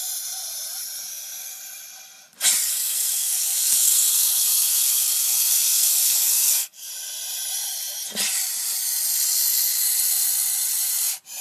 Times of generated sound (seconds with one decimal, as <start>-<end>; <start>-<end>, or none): 1.1-1.6; 2.7-6.9